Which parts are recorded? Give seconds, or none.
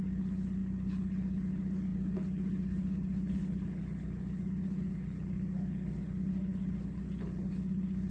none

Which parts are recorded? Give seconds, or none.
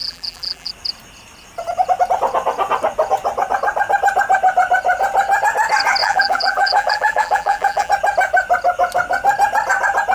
0.7-6.0; 7.9-10.1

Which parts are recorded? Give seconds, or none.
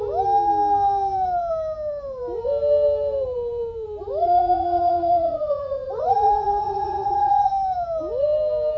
0.0-4.2; 7.5-8.8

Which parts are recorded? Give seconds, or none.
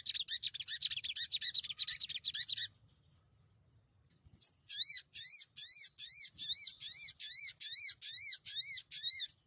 0.0-9.5